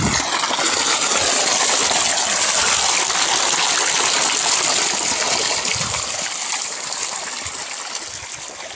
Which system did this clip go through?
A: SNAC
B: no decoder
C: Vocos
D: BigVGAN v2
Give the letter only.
B